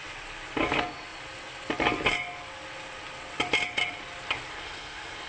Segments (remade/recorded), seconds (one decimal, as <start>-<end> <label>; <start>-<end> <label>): 0.0-4.5 recorded; 4.5-5.3 remade